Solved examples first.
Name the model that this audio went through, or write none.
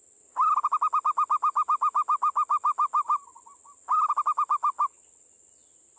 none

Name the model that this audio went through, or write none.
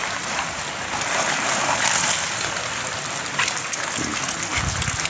none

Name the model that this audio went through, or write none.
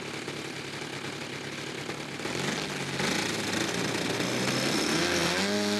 none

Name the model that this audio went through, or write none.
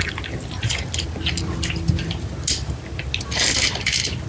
none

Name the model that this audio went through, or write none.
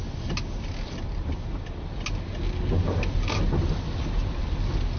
none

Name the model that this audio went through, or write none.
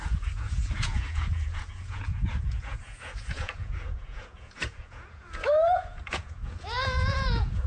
vocoder, Vocos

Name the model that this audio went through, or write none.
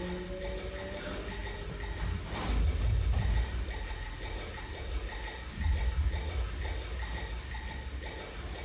none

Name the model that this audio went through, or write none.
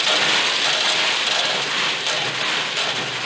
none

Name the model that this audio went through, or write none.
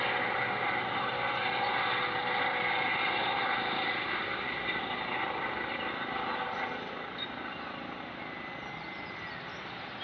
none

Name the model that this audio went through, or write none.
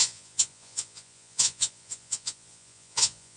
vocoder, Vocos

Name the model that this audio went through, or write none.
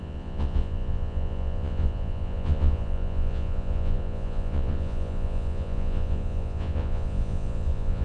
vocoder, Vocos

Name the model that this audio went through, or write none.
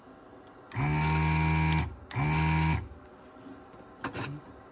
none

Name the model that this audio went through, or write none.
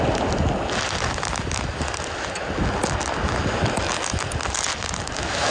none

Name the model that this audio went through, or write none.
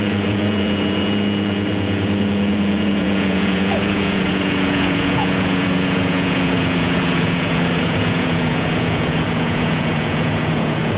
vocoder, Vocos